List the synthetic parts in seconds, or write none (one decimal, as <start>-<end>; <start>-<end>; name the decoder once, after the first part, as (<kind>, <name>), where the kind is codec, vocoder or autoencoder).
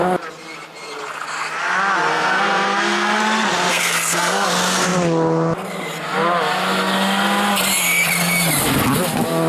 2.1-3.2 (codec, SNAC); 3.7-4.5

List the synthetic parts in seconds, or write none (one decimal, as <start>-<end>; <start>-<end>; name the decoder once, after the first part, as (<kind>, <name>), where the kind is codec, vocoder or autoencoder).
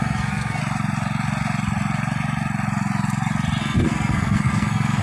0.0-0.6 (codec, SNAC); 3.6-5.0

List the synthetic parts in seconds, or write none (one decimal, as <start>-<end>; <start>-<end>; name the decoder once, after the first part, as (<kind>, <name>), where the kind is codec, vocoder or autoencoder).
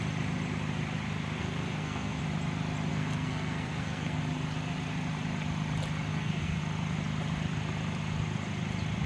1.4-2.2 (codec, SNAC); 2.9-4.2; 6.1-6.6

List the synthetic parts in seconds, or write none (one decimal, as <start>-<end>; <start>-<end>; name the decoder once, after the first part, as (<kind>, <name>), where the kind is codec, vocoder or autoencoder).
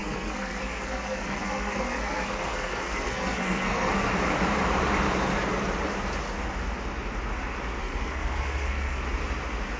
0.0-4.1 (codec, SNAC); 7.8-9.0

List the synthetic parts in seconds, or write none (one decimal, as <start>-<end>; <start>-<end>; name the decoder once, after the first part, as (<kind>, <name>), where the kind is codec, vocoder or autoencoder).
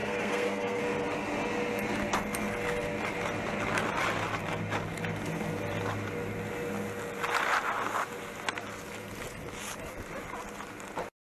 0.0-0.8 (codec, SNAC)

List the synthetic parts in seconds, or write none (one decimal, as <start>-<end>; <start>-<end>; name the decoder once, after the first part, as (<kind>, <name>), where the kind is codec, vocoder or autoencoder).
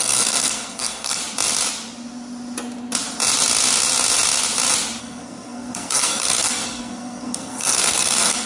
0.0-1.2 (codec, SNAC); 5.0-8.5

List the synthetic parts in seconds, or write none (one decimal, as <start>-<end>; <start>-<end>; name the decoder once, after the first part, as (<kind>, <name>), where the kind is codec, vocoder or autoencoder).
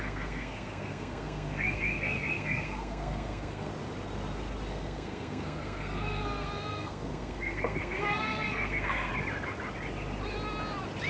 0.0-3.7 (codec, SNAC); 4.7-9.1